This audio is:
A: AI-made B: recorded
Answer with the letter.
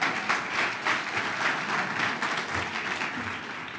B